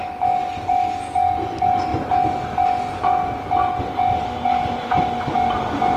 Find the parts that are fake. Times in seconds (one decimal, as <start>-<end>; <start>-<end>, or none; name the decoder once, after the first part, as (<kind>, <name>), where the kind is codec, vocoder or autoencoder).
none